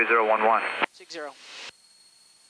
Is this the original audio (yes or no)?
yes